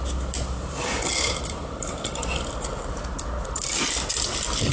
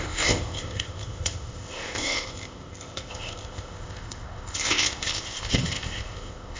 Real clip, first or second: first